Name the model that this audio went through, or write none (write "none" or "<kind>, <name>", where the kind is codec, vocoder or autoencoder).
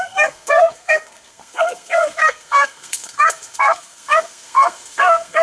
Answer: codec, SNAC